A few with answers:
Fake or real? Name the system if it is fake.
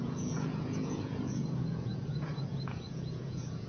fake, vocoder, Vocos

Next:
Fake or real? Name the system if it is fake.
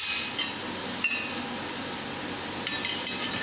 real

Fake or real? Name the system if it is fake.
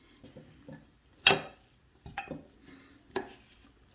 real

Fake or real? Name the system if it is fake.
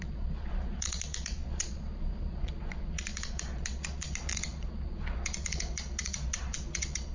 fake, vocoder, Vocos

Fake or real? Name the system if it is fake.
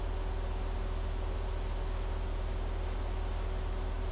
real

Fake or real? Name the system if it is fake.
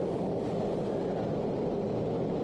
real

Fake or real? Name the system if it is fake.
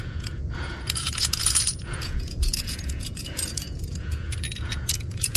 fake, vocoder, Vocos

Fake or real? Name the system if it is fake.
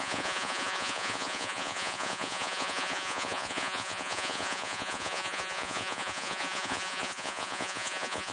fake, vocoder, Vocos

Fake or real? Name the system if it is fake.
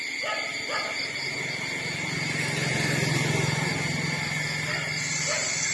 real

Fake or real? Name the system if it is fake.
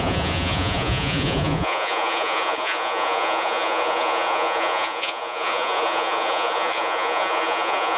fake, vocoder, Vocos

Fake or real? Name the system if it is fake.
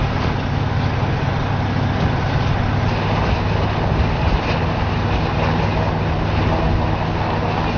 real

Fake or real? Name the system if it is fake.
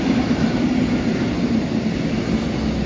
real